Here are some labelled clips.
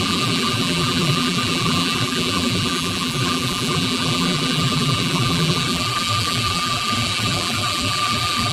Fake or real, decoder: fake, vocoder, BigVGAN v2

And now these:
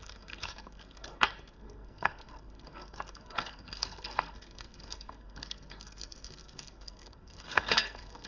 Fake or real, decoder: fake, codec, SNAC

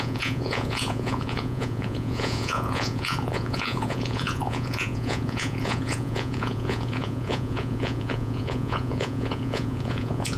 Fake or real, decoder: fake, vocoder, Vocos